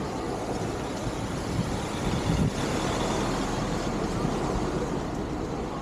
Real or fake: real